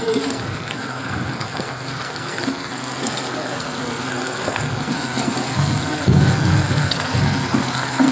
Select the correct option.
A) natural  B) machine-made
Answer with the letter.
B